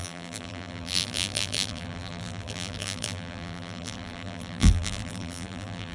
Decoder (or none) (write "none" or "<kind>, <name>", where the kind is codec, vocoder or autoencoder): vocoder, BigVGAN v2